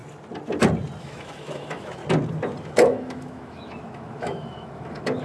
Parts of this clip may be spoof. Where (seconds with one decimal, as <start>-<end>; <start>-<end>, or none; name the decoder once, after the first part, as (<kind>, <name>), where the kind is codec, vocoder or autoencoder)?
1.0-2.0 (autoencoder, DAC-VAE); 2.6-5.2